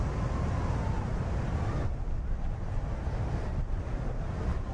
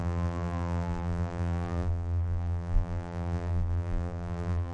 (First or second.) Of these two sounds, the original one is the first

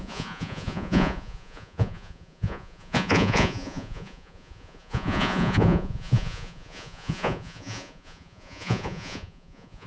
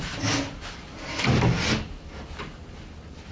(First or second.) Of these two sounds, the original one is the second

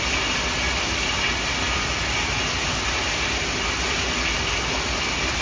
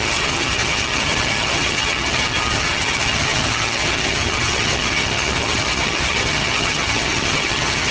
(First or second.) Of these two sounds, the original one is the first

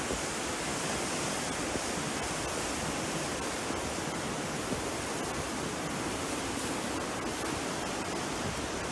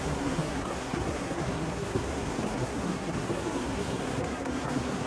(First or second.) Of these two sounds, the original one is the first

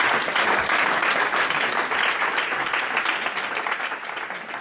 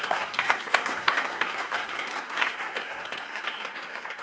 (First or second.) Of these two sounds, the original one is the first